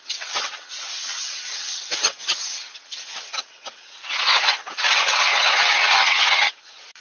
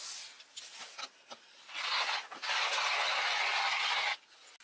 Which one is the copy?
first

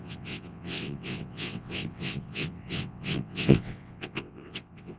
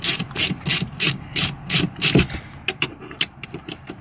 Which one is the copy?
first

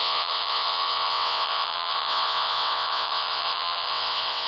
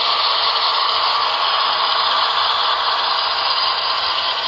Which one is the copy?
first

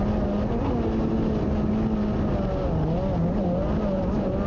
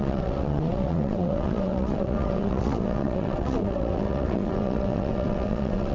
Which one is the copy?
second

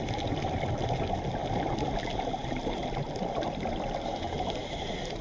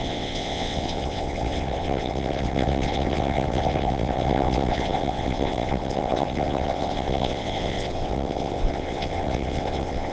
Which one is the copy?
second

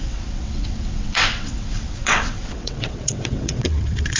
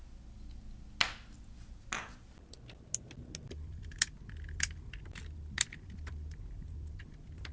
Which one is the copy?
first